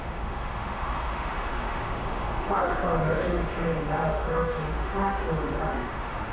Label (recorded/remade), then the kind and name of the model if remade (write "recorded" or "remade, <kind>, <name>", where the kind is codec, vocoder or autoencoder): remade, autoencoder, DAC-VAE